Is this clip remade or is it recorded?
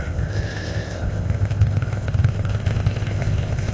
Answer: remade